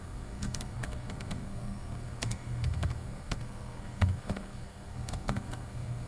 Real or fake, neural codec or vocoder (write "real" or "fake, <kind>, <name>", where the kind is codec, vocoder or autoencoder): fake, codec, SNAC